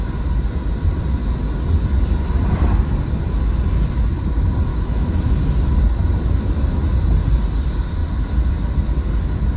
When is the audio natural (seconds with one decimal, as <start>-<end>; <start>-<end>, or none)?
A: 0.0-4.7; 5.4-9.6